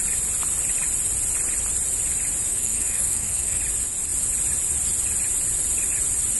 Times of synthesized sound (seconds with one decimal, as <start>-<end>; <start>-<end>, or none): 2.5-3.6